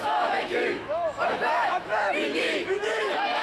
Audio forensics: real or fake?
fake